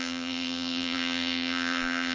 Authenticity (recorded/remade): remade